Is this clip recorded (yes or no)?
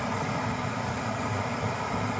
yes